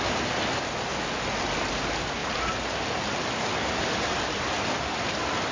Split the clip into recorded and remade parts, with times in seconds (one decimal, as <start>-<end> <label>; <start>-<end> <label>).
0.0-0.9 recorded; 0.9-1.7 remade; 1.7-2.2 recorded; 2.2-3.1 remade; 3.1-5.5 recorded

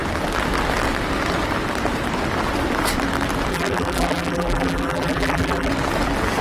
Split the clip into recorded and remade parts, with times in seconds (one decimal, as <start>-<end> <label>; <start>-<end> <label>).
0.0-3.5 recorded; 3.5-5.7 remade; 5.7-6.4 recorded

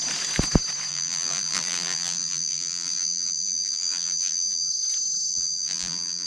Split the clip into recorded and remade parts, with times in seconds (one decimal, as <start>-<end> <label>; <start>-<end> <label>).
0.0-0.9 recorded; 0.9-4.7 remade; 4.7-5.3 recorded; 5.3-6.3 remade

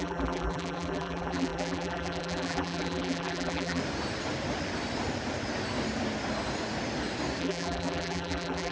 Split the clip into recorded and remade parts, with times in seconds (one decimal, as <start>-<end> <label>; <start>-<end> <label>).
0.0-3.8 remade; 3.8-7.4 recorded; 7.4-8.7 remade

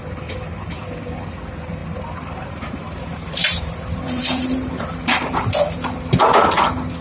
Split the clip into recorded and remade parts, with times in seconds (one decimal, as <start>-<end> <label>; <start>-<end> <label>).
0.0-1.8 recorded; 1.8-4.7 remade; 4.7-7.0 recorded

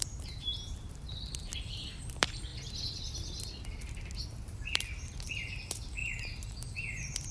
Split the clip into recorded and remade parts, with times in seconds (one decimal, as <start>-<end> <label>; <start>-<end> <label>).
0.0-1.3 remade; 1.3-2.0 recorded; 2.0-2.5 remade; 2.5-4.4 recorded; 4.4-7.3 remade

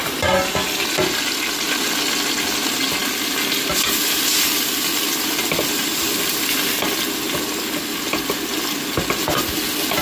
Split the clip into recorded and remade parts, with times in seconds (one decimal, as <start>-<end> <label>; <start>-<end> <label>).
0.0-10.0 recorded

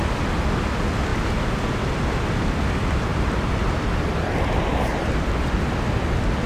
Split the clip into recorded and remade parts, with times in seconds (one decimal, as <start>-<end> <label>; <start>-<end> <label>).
0.0-1.1 recorded; 1.1-2.0 remade; 2.0-3.1 recorded; 3.1-3.7 remade; 3.7-4.9 recorded; 4.9-5.8 remade; 5.8-6.5 recorded